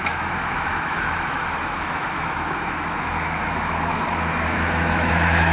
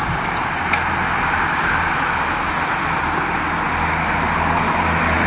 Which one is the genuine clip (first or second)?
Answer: second